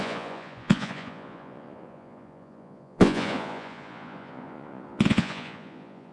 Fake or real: fake